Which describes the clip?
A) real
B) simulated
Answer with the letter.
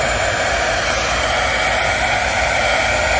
A